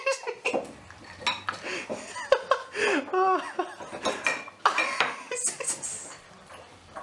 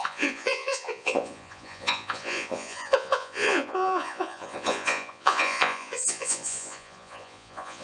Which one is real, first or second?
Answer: first